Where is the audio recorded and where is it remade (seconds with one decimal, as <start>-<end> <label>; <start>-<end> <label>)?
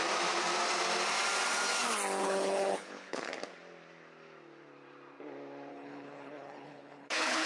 0.0-2.2 recorded; 2.2-3.3 remade; 3.3-5.7 recorded; 5.7-7.5 remade